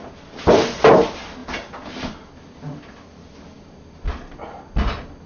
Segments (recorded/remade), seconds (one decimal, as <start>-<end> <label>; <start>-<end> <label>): 0.0-5.3 recorded